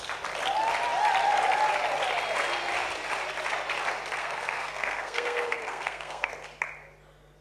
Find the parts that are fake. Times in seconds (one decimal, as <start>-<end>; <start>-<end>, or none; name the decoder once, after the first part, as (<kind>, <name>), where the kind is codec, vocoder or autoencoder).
4.2-6.3 (codec, SNAC)